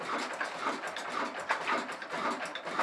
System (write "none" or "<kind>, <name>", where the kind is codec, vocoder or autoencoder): none